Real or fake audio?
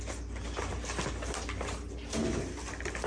real